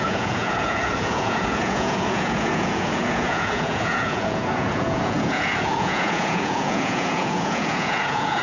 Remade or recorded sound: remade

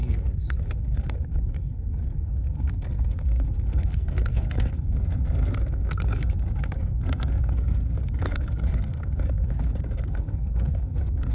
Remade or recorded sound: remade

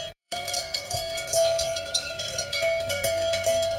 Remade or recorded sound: remade